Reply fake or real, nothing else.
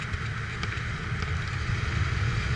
real